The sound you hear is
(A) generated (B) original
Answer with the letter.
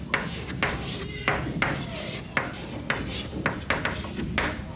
B